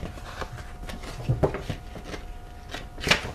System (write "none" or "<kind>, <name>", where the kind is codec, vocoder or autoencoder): none